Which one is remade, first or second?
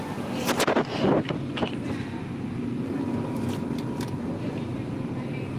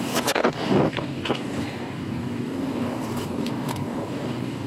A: second